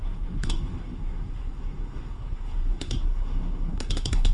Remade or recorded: remade